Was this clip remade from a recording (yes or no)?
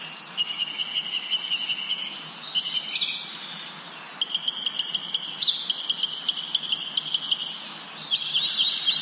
no